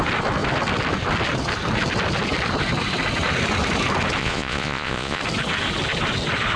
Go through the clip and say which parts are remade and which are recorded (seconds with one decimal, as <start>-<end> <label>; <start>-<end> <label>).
0.0-4.2 recorded; 4.2-5.2 remade; 5.2-6.6 recorded